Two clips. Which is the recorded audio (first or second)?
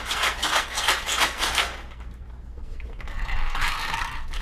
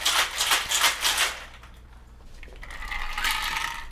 second